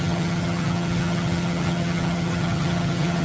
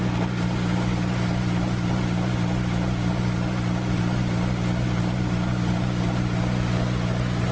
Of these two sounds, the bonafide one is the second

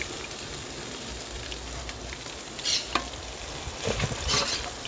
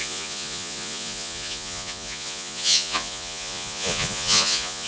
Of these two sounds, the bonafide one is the first